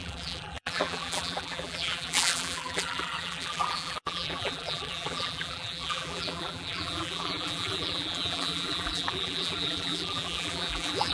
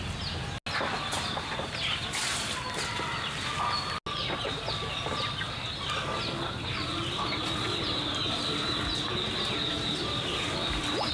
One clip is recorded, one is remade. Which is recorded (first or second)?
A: second